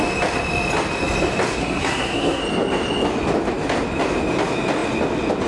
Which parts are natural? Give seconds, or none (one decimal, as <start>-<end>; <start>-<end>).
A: 0.0-1.6; 2.4-5.5